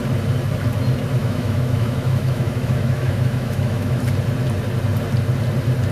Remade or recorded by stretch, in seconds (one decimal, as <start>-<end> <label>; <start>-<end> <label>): 0.0-1.2 recorded; 1.2-4.0 remade; 4.0-5.9 recorded